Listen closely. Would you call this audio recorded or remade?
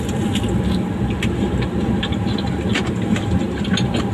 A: recorded